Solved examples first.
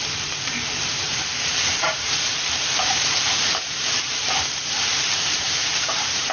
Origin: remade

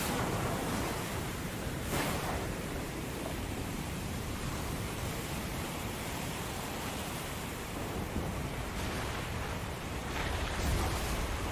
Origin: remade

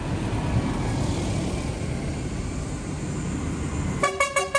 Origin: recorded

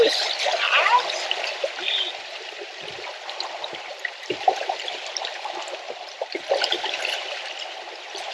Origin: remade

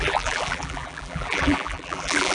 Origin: remade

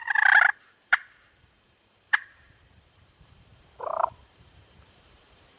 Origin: remade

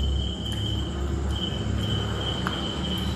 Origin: recorded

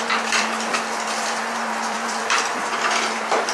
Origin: remade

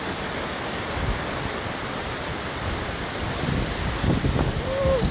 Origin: remade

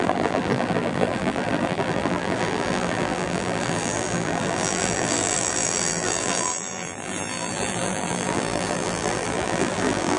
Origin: remade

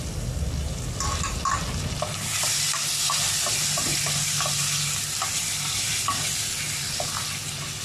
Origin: remade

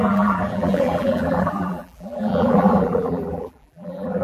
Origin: remade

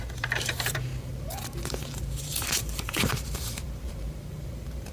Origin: remade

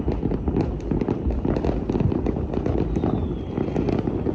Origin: remade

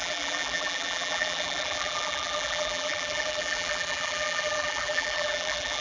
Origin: remade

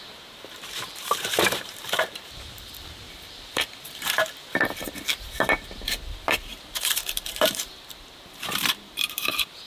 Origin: remade